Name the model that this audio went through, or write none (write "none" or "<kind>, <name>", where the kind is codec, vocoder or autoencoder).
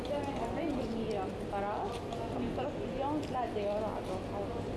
none